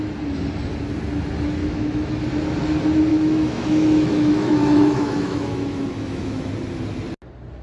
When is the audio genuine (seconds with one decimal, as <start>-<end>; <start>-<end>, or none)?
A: 0.0-1.6; 2.1-3.1; 6.5-7.6